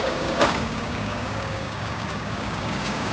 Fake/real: fake